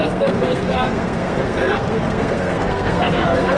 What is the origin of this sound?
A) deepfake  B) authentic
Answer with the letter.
A